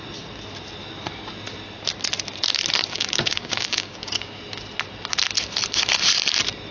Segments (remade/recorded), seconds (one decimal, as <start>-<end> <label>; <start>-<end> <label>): 0.0-2.8 recorded; 2.8-4.4 remade; 4.4-6.7 recorded